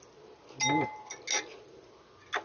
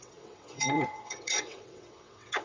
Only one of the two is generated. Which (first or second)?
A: second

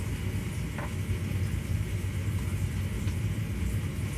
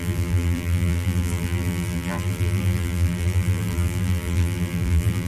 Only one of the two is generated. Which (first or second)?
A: second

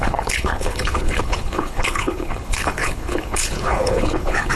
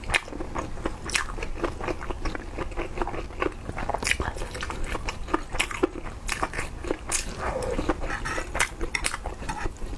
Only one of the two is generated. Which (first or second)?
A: first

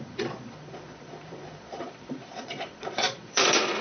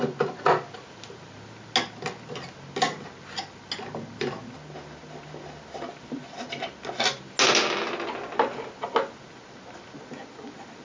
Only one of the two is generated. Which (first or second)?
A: first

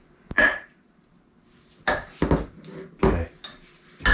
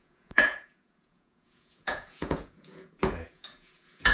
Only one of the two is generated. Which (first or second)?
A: second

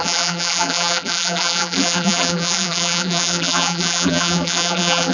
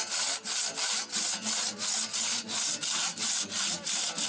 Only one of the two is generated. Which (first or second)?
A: first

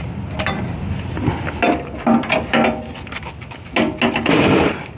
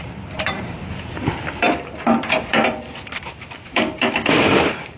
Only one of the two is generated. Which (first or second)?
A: second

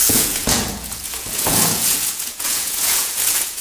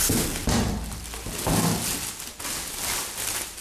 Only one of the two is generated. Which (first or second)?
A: first